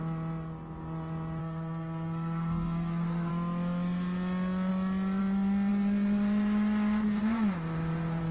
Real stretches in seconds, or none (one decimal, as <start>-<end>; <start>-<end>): 0.0-1.4; 3.3-8.3